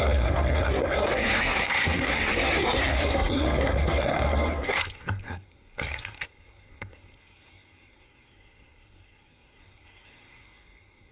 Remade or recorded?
remade